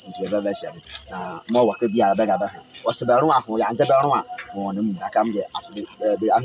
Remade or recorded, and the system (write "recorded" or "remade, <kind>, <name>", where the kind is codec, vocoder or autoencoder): recorded